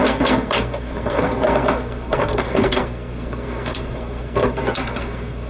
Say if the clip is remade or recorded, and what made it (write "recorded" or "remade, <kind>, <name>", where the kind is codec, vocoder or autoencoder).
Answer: remade, codec, SNAC